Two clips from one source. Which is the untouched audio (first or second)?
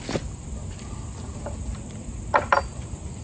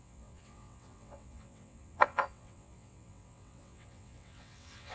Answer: first